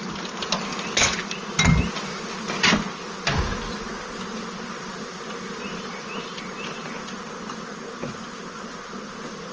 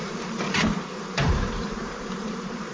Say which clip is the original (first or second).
first